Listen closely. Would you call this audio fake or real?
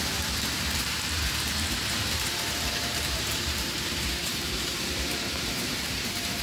fake